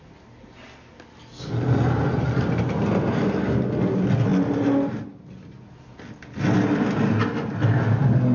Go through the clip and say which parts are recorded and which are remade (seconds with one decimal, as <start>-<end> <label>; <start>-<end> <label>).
0.0-8.3 recorded